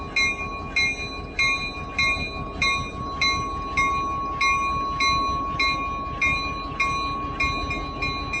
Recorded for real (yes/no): yes